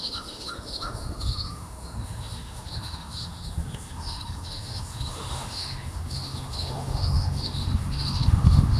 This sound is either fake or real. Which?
fake